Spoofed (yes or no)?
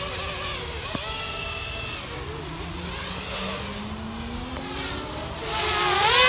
no